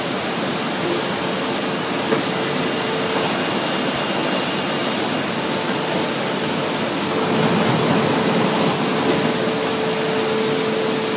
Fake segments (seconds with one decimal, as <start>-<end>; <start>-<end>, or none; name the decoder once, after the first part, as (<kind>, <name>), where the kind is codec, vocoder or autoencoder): none